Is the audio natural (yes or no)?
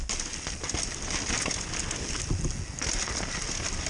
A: yes